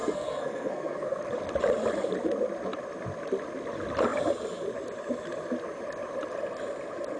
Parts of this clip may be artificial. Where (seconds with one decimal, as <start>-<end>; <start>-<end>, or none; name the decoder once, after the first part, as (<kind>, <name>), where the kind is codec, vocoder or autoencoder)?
0.0-1.2 (codec, SNAC)